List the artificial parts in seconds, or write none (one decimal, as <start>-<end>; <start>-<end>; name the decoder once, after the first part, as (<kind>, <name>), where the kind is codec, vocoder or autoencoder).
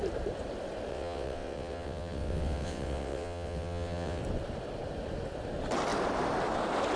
0.9-4.2 (vocoder, WaveNeXt)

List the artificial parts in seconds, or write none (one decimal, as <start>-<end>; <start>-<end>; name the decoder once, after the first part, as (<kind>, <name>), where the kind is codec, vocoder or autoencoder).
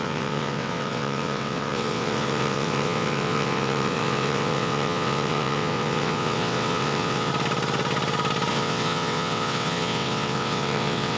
0.0-7.3 (vocoder, WaveNeXt); 8.5-11.2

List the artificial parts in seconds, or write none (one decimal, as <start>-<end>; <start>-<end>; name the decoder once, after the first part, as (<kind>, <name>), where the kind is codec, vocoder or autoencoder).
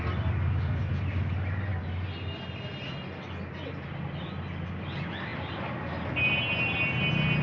none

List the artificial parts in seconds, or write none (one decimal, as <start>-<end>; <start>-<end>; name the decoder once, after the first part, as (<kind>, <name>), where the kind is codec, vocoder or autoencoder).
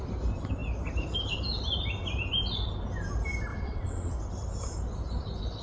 3.5-4.2 (vocoder, WaveNeXt)